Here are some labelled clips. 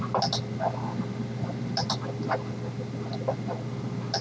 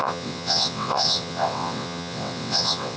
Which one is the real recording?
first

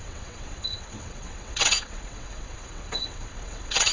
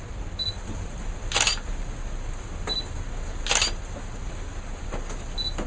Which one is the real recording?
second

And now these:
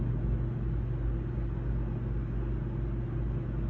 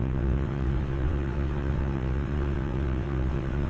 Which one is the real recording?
first